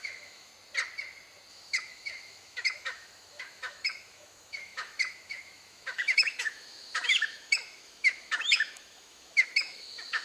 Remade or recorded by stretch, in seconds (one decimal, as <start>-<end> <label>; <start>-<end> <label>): 0.0-0.5 remade; 0.5-1.5 recorded; 1.5-10.2 remade